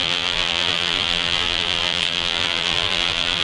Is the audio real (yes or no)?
no